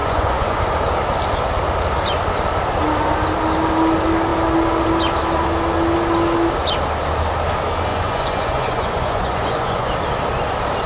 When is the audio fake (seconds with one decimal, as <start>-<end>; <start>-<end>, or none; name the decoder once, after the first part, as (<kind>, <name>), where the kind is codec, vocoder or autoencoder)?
0.0-0.6 (vocoder, Vocos); 7.9-9.9